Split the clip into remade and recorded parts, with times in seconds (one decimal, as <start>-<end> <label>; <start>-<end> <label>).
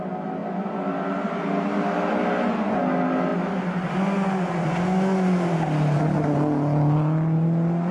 0.0-7.9 recorded